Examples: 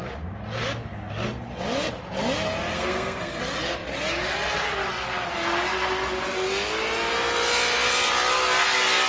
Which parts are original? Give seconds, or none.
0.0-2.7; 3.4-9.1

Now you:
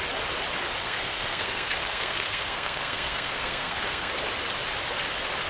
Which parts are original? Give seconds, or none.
0.0-0.8; 4.1-5.5

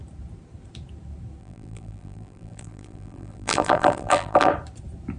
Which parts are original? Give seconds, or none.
0.0-1.4; 4.5-5.2

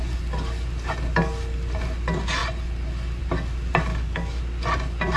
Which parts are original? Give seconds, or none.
0.0-3.9; 4.4-5.2